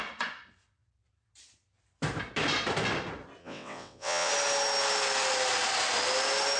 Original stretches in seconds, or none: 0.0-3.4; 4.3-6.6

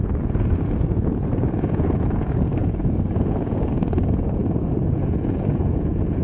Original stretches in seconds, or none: none

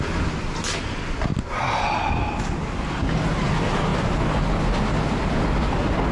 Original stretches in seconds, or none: 0.0-6.1

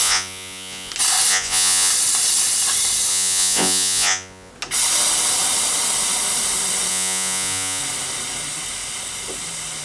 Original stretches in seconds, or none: 0.9-1.3; 1.9-3.1; 4.5-6.9; 7.8-9.8

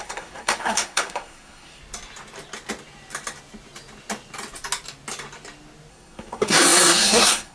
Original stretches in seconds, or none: 1.8-5.9

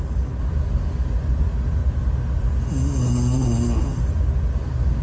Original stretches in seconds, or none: 0.0-5.0

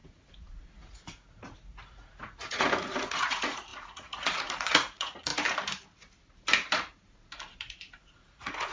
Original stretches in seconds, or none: 5.3-7.6

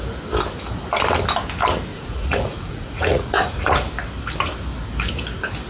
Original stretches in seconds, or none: 0.0-1.9; 3.8-5.7